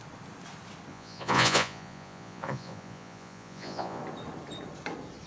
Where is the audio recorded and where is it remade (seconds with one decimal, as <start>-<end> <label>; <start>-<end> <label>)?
0.0-0.9 recorded; 0.9-4.0 remade; 4.0-5.3 recorded